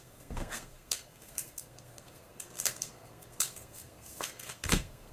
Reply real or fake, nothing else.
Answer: fake